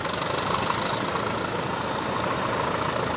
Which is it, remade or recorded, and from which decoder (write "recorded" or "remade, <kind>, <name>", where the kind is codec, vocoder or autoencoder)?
recorded